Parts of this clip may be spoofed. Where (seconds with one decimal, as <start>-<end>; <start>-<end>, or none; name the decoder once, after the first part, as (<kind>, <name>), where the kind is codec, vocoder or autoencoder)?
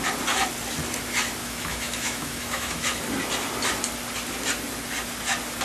1.4-3.0 (autoencoder, DAC-VAE)